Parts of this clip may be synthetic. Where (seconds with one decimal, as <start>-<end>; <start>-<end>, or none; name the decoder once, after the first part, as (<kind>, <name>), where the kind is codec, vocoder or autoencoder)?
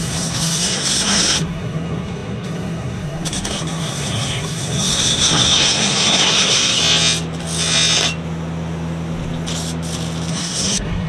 0.0-6.8 (codec, SNAC); 10.3-11.1